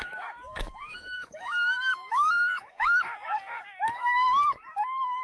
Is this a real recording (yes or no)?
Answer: no